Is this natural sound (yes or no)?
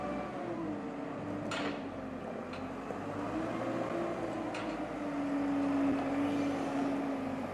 yes